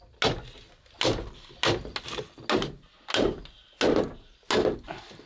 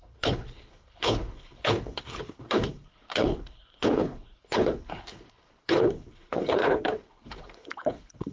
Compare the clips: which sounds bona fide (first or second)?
first